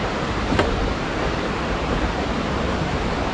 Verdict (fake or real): fake